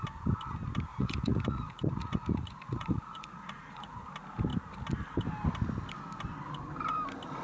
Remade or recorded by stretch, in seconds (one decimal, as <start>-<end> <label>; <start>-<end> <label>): 0.0-0.9 recorded; 0.9-4.0 remade; 4.0-7.4 recorded